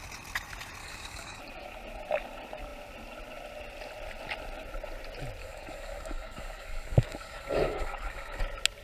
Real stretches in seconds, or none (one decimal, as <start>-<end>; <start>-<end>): 0.0-0.8; 1.4-5.4; 8.4-8.8